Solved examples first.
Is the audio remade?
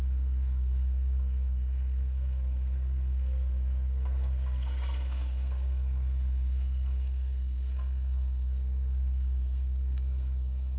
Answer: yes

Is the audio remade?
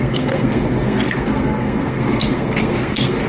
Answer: yes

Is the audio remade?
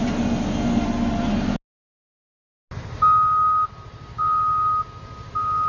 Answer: no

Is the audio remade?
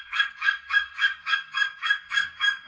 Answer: yes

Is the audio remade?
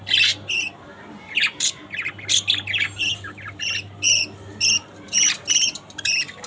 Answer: yes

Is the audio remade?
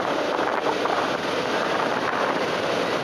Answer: yes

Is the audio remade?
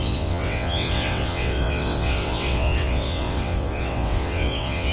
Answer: yes